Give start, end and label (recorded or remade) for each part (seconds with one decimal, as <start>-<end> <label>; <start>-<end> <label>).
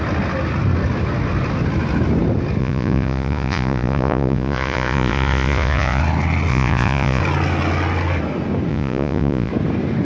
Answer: 0.0-2.6 recorded; 2.6-6.0 remade; 6.0-6.5 recorded; 6.5-7.2 remade; 7.2-8.7 recorded; 8.7-9.5 remade; 9.5-10.0 recorded